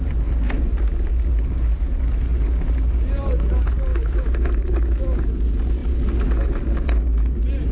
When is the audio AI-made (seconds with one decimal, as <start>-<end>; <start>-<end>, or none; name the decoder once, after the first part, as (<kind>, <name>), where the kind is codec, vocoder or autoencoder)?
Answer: 3.9-5.3 (autoencoder, DAC-VAE)